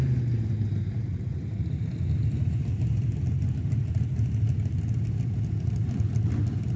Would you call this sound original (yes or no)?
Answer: yes